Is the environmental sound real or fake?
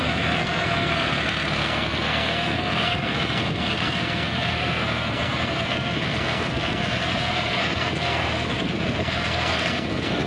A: fake